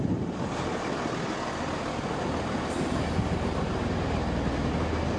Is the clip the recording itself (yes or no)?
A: yes